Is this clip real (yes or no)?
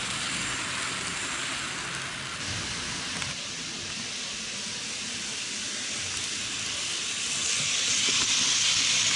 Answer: yes